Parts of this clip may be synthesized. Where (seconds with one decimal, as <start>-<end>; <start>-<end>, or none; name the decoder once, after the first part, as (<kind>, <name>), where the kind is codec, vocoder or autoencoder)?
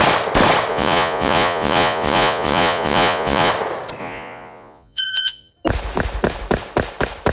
0.7-3.5 (vocoder, Vocos); 4.0-5.5